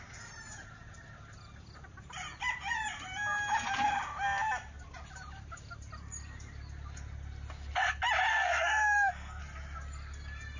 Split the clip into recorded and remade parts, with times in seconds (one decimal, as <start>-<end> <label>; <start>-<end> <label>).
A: 0.0-8.3 recorded; 8.3-9.4 remade; 9.4-10.6 recorded